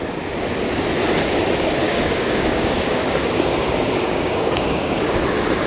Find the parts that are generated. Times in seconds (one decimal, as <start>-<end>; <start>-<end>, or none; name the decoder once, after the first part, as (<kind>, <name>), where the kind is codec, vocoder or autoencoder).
1.8-5.2 (codec, DAC)